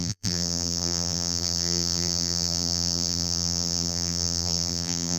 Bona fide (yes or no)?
no